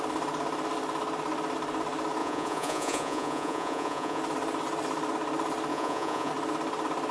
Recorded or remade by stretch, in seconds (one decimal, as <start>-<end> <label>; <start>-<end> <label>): 0.0-2.2 recorded; 2.2-4.2 remade; 4.2-5.7 recorded; 5.7-6.3 remade; 6.3-7.1 recorded